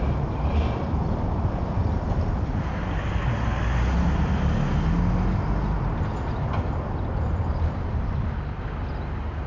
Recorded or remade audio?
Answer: recorded